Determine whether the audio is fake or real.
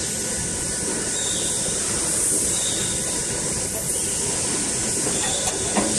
real